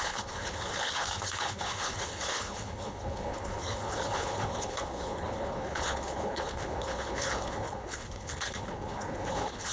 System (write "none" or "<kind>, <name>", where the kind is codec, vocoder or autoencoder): codec, HILCodec